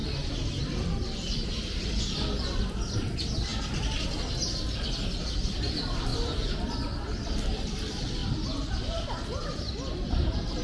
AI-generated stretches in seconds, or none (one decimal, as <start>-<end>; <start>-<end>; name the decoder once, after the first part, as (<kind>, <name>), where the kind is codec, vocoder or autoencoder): 0.6-3.5 (vocoder, BigVGAN v2); 4.3-8.2; 10.1-10.6